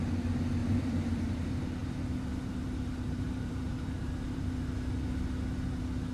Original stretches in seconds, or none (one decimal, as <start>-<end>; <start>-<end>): 0.0-0.6; 1.2-1.8; 4.5-6.1

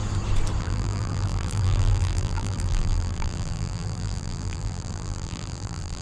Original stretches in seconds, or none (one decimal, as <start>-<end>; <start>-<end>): 0.0-0.6

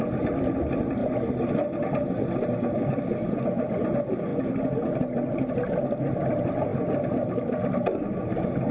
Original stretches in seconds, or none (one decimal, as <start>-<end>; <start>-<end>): 0.0-8.7

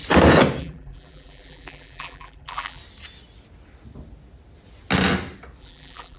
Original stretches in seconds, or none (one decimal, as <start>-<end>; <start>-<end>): 0.0-0.6; 2.8-5.6

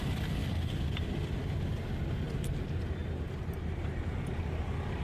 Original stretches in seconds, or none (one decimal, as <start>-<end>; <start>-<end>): 0.0-5.0

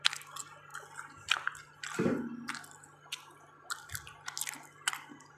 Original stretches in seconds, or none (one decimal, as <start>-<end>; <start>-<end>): 0.0-5.4

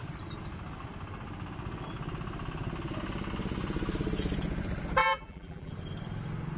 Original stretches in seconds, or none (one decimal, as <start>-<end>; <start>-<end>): 0.0-5.0; 5.7-6.6

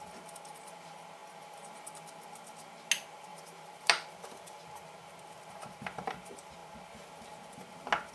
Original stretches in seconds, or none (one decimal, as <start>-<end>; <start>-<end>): 0.0-3.3; 4.6-8.1